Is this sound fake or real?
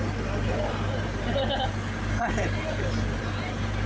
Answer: real